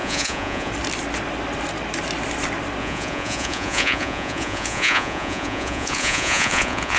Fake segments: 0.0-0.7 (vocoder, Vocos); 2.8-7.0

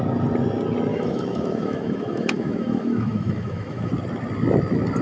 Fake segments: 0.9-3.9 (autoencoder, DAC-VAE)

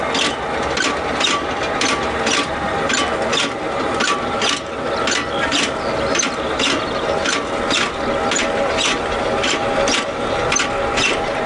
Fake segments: none